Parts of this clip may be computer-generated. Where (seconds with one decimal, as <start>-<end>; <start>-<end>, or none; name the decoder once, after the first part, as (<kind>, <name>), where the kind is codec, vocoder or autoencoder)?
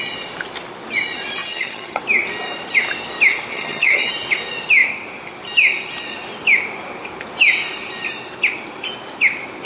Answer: 1.4-2.0 (vocoder, HiFi-GAN); 3.5-4.1